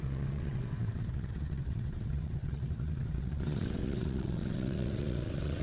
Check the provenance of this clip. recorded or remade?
remade